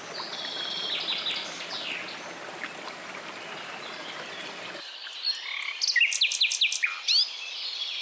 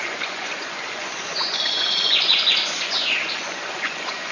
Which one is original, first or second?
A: first